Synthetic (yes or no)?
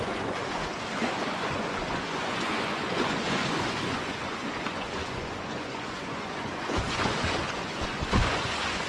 yes